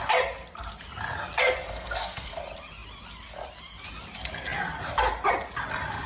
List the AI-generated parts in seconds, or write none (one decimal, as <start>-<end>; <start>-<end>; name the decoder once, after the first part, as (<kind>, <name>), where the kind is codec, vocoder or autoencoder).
1.7-2.4 (codec, SNAC)